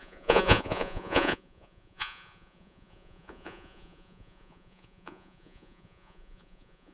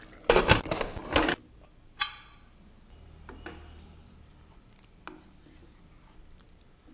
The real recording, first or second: second